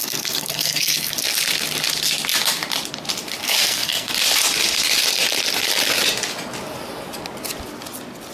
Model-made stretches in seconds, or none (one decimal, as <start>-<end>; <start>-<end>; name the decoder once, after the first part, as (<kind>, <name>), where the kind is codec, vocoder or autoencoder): 0.0-1.1 (codec, SNAC); 3.4-4.1